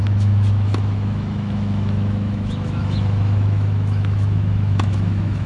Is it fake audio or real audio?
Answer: fake